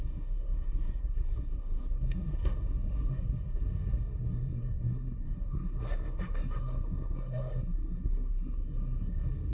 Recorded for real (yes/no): no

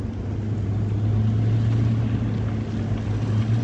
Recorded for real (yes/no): yes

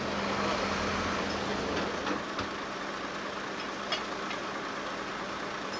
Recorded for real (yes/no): yes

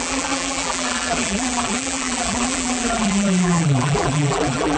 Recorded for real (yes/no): no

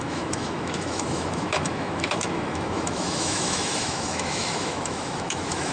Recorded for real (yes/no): no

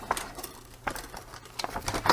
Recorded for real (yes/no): yes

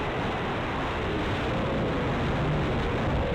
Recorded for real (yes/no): yes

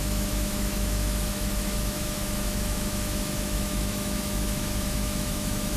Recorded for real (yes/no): no